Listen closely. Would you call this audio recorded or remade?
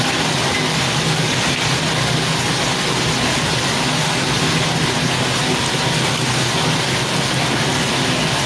recorded